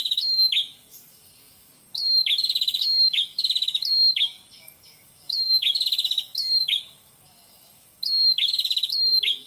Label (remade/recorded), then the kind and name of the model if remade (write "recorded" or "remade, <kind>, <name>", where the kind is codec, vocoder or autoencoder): remade, codec, DAC